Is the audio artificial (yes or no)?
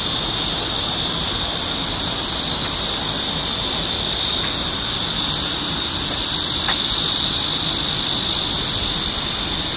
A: no